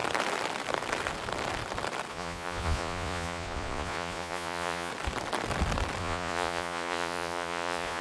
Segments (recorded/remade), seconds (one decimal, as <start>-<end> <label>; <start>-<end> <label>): 0.0-2.1 recorded; 2.1-4.9 remade; 4.9-6.0 recorded; 6.0-8.0 remade